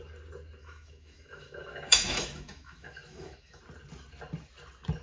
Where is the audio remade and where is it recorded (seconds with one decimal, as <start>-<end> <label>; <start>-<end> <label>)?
0.0-0.6 recorded; 0.6-3.6 remade; 3.6-5.0 recorded